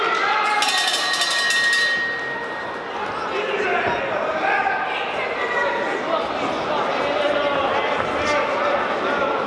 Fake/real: real